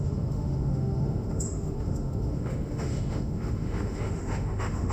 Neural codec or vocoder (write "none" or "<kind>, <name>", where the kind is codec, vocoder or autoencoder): autoencoder, DAC-VAE